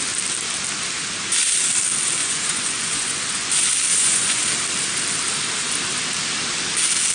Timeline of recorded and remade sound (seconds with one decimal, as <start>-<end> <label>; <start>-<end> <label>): 0.0-2.2 recorded; 2.2-3.5 remade; 3.5-3.9 recorded; 3.9-4.5 remade; 4.5-7.1 recorded